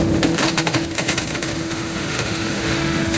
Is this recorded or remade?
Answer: remade